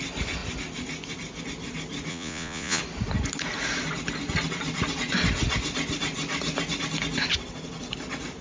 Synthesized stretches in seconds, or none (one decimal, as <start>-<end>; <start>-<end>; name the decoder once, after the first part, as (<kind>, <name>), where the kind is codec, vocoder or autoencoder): 2.1-2.8 (vocoder, Vocos)